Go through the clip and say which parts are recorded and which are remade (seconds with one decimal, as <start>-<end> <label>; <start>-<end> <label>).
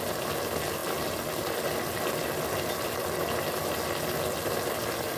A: 0.0-5.2 recorded